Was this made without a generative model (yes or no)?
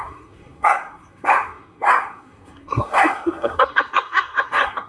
no